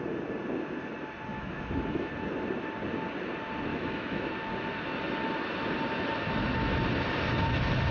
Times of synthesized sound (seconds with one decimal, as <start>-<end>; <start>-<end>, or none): 1.3-2.1; 3.7-4.3